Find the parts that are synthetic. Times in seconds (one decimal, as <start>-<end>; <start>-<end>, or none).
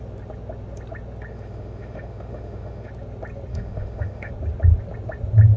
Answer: 1.3-2.9; 3.5-4.3